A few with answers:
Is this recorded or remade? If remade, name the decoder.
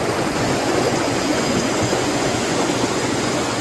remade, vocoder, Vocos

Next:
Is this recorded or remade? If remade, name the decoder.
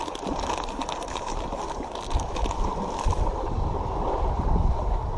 recorded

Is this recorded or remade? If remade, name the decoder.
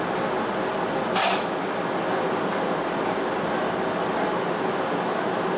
recorded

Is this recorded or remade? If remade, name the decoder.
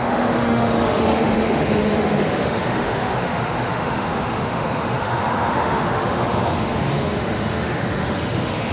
remade, autoencoder, DAC-VAE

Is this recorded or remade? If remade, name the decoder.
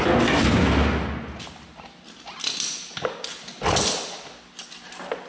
recorded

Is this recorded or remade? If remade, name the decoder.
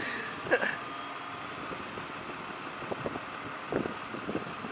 recorded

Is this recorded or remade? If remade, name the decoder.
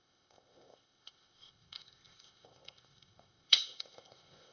remade, codec, ZipCodec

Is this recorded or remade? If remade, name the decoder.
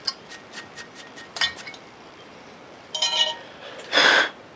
recorded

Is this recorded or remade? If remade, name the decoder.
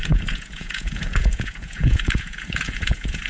remade, vocoder, Vocos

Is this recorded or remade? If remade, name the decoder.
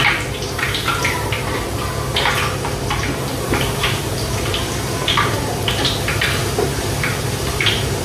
remade, vocoder, BigVGAN v2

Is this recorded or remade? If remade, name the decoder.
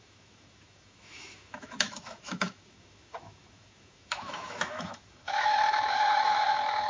remade, autoencoder, DAC-VAE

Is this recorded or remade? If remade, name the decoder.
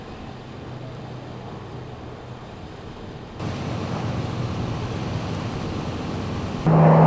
recorded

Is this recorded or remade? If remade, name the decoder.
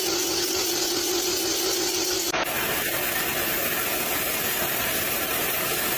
recorded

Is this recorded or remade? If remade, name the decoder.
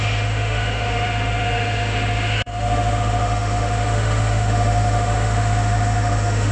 remade, autoencoder, DAC-VAE